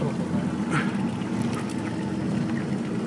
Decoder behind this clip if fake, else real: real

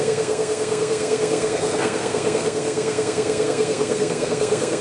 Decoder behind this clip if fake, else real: fake, codec, SNAC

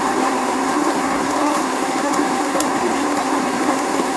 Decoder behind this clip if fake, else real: fake, codec, SNAC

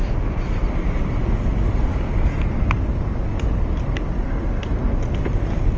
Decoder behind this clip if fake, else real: real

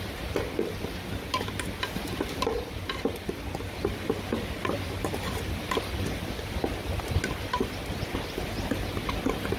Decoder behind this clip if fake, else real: real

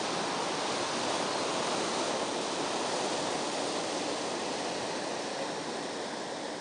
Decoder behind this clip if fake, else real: real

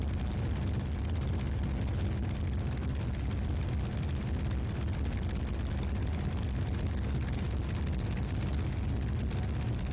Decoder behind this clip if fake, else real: real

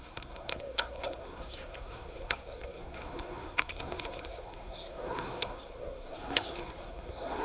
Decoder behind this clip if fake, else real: fake, codec, SNAC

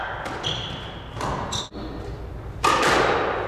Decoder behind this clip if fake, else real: real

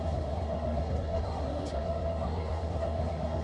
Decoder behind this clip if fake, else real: fake, codec, SNAC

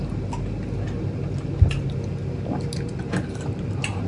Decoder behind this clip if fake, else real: real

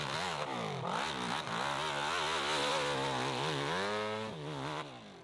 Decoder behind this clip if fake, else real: real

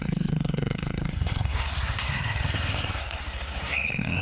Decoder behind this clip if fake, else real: fake, codec, SNAC